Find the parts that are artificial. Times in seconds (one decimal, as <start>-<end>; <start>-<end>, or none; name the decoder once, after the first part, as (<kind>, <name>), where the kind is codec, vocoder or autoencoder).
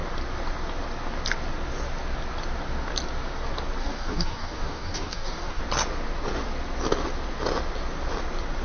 3.8-5.6 (codec, DAC)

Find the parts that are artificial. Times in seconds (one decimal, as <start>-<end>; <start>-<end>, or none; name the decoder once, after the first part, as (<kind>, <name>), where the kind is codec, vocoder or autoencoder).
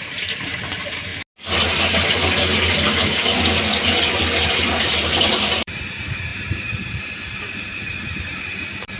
0.0-1.1 (vocoder, BigVGAN v2); 4.8-9.0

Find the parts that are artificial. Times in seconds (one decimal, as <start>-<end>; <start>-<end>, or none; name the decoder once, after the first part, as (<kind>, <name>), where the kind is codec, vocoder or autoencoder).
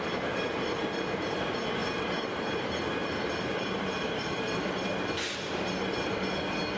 0.0-1.4 (vocoder, BigVGAN v2); 1.8-5.9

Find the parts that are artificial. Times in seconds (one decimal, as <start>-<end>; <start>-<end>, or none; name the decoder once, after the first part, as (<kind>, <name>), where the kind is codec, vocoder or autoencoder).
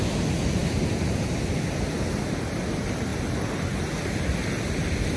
0.6-2.2 (vocoder, BigVGAN v2)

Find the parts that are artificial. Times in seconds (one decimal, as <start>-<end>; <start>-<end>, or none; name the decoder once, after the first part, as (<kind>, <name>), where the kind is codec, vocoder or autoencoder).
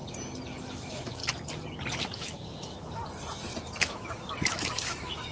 0.6-1.2 (autoencoder, DAC-VAE); 2.0-3.0; 3.8-5.3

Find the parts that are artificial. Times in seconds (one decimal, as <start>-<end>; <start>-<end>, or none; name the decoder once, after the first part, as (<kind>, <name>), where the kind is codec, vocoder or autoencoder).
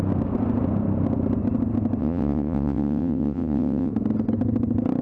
2.0-3.9 (vocoder, WaveNeXt)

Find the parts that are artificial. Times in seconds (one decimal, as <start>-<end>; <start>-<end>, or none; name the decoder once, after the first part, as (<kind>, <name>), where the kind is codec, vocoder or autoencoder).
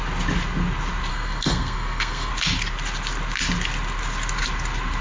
1.1-2.3 (codec, SNAC)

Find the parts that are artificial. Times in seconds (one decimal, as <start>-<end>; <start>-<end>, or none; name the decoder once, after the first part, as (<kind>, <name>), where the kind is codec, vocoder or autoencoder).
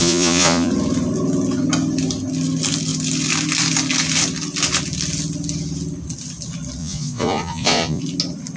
0.0-0.7 (vocoder, Vocos); 6.8-8.0